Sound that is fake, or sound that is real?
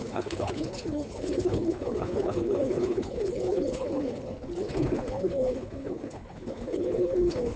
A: fake